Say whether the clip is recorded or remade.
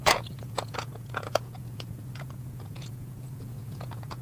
remade